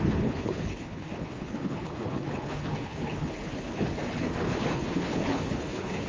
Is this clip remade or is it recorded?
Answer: remade